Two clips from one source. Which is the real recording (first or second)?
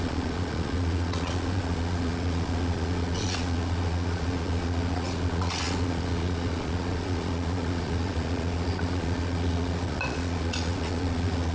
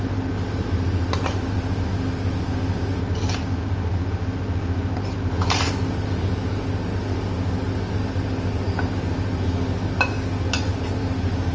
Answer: second